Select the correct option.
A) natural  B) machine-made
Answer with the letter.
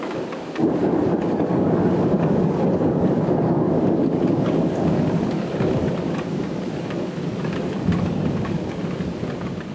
B